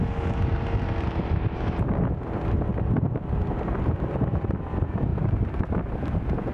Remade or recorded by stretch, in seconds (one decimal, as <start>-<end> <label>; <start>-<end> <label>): 0.0-5.1 recorded; 5.1-5.7 remade; 5.7-6.5 recorded